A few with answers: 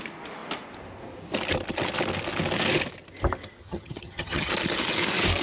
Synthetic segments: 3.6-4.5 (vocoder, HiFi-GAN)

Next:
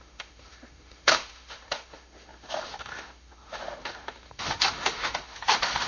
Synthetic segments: 0.0-5.9 (autoencoder, DAC-VAE)

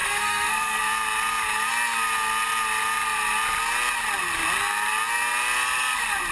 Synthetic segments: 0.0-0.8 (codec, SNAC)

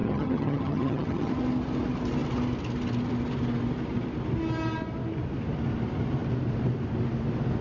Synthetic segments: 0.0-1.3 (vocoder, HiFi-GAN)

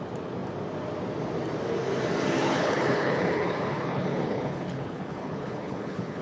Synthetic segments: 2.4-6.2 (codec, HILCodec)

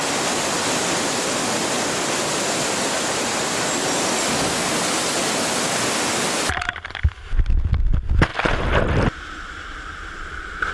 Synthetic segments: 5.2-7.2 (vocoder, BigVGAN v2)

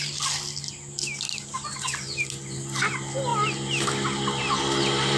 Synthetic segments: none

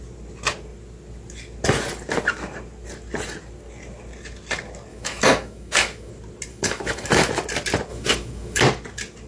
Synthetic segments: 4.9-6.1 (autoencoder, DAC-VAE); 6.5-7.3; 7.9-8.6